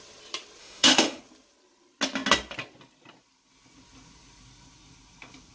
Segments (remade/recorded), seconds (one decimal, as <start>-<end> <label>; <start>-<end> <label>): 0.0-0.6 recorded; 0.6-1.2 remade; 1.2-5.5 recorded